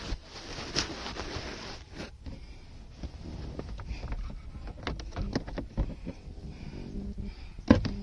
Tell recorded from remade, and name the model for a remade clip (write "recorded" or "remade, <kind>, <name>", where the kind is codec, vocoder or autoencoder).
recorded